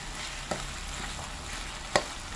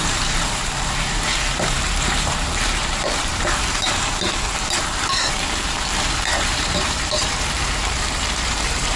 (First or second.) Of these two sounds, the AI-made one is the second